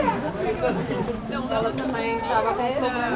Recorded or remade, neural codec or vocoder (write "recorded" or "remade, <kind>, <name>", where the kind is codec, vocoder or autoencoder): recorded